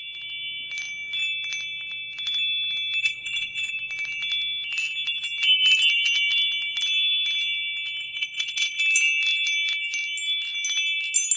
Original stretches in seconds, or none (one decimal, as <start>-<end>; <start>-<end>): 0.0-3.0; 3.7-8.0; 8.8-11.4